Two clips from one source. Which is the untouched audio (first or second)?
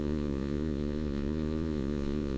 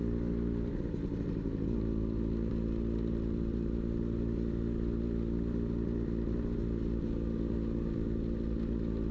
second